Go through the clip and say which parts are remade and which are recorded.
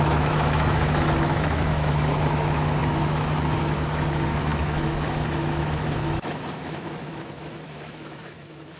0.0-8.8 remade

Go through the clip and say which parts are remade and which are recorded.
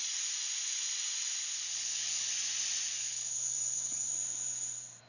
0.0-1.7 recorded; 1.7-2.3 remade; 2.3-3.0 recorded; 3.0-4.1 remade; 4.1-5.1 recorded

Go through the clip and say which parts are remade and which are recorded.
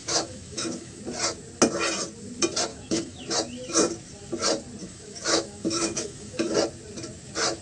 0.0-1.0 remade; 1.0-2.7 recorded; 2.7-3.2 remade; 3.2-4.8 recorded; 4.8-6.5 remade; 6.5-7.6 recorded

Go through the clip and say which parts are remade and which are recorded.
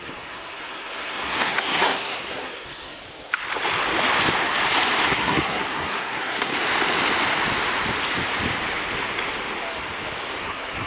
0.0-3.0 remade; 3.0-5.0 recorded; 5.0-6.5 remade; 6.5-10.4 recorded; 10.4-10.9 remade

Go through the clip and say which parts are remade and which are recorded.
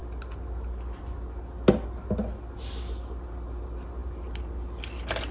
0.0-5.3 recorded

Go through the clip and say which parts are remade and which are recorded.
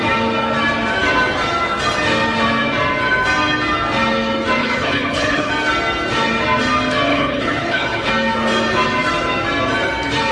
0.0-4.6 recorded; 4.6-5.5 remade; 5.5-7.1 recorded; 7.1-8.1 remade; 8.1-10.3 recorded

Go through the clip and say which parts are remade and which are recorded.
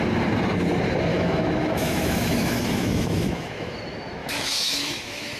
0.0-1.1 recorded; 1.1-3.8 remade; 3.8-4.2 recorded; 4.2-5.4 remade